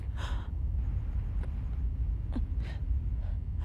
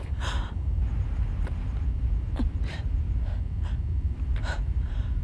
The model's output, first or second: second